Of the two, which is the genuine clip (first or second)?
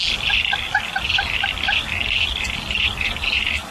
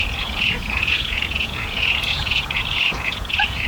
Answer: first